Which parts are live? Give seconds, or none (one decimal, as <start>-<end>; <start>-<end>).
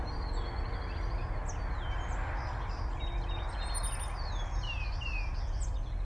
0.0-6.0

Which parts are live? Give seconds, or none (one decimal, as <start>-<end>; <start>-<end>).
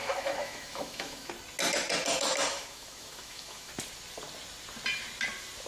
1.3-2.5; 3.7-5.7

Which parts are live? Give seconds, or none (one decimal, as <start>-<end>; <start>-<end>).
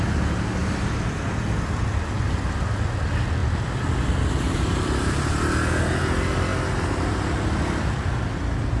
0.0-0.6; 1.3-3.4; 5.1-8.8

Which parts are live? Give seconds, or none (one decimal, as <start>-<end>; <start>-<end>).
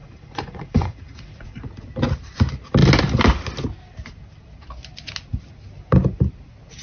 1.6-6.8